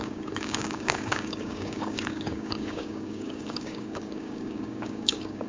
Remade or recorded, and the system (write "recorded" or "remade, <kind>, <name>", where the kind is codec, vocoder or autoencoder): remade, codec, DAC